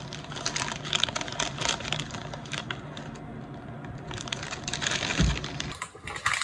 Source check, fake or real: real